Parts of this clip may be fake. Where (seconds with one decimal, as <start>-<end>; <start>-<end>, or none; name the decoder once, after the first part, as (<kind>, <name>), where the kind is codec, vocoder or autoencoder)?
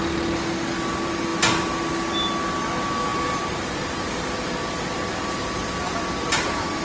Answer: 1.3-1.9 (vocoder, BigVGAN v2); 3.1-6.8